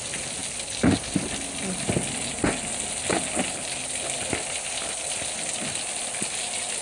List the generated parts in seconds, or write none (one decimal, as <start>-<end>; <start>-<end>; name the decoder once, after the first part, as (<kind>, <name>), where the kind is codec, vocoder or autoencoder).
none